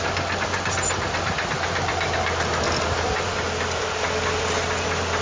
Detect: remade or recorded recorded